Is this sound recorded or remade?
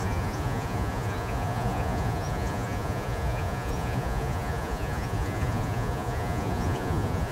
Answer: remade